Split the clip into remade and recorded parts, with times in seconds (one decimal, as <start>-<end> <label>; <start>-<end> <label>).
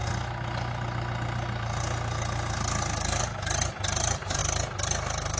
0.0-5.4 recorded